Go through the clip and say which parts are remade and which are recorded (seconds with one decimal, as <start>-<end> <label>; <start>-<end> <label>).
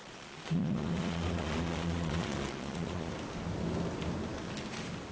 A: 0.0-3.1 remade; 3.1-5.1 recorded